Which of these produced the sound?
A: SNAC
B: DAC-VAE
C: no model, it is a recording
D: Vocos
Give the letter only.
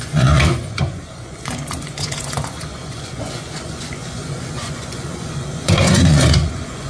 D